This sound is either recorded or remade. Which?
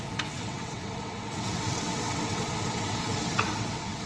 remade